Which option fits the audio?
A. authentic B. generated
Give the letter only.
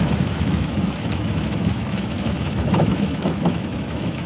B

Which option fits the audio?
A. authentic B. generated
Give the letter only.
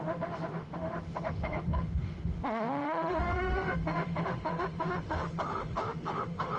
B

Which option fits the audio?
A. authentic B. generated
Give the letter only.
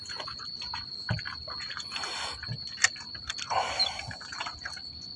A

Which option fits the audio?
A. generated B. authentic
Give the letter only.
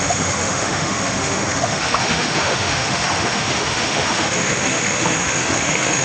A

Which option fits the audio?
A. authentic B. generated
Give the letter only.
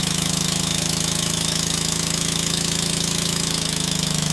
B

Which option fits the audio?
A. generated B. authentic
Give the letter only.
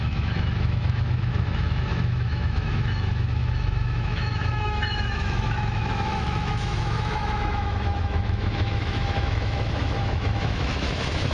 A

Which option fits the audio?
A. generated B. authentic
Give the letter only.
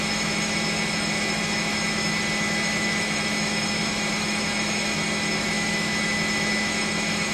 A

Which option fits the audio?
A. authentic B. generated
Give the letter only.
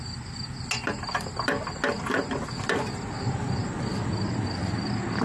A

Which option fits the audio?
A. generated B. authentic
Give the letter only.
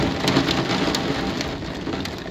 B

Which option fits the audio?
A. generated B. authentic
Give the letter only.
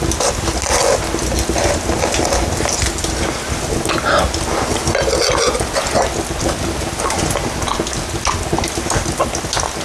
B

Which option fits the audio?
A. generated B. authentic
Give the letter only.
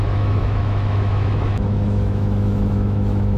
A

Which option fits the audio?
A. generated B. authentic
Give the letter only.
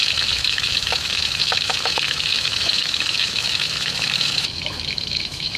A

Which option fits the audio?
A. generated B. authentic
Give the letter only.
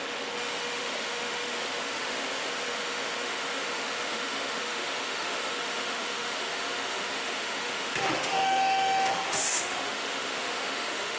A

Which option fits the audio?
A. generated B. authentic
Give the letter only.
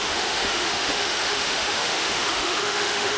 A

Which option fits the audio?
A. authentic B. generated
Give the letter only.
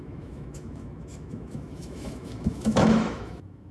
B